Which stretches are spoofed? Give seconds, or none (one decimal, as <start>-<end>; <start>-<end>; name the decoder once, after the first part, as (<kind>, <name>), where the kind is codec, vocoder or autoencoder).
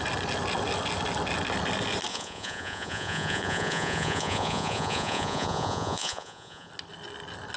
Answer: 2.1-6.7 (vocoder, Vocos)